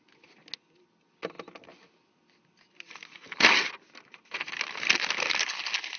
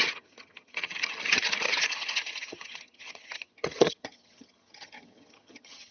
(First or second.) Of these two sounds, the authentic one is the first